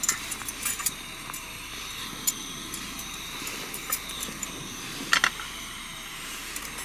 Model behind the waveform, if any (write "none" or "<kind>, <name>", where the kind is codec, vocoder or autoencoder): vocoder, BigVGAN v2